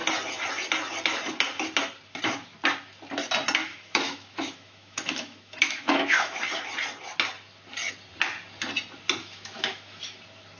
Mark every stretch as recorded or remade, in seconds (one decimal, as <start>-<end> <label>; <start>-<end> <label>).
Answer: 0.0-3.6 recorded; 3.6-6.4 remade; 6.4-9.2 recorded; 9.2-10.0 remade; 10.0-10.6 recorded